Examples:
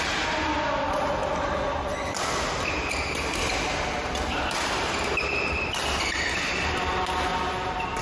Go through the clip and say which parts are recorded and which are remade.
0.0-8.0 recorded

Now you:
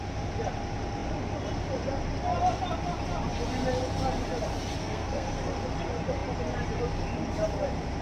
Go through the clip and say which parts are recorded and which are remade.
0.0-4.8 recorded; 4.8-5.3 remade; 5.3-8.0 recorded

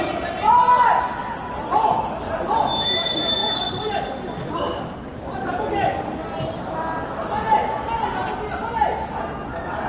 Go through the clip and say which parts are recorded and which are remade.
0.0-9.9 recorded

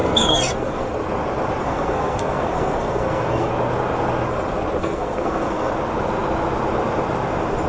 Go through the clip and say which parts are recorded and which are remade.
0.0-0.9 remade; 0.9-1.6 recorded; 1.6-3.5 remade; 3.5-4.8 recorded; 4.8-5.7 remade; 5.7-7.7 recorded

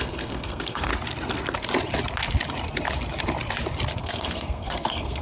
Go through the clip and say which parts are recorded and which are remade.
0.0-0.9 remade; 0.9-4.0 recorded; 4.0-5.2 remade

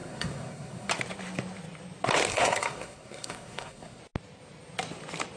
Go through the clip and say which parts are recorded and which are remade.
0.0-0.9 remade; 0.9-2.3 recorded; 2.3-4.0 remade; 4.0-5.4 recorded